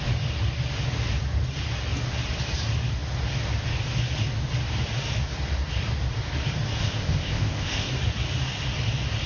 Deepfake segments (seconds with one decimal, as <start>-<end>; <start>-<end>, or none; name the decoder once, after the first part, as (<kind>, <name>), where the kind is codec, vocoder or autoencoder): 6.8-7.9 (codec, ZipCodec)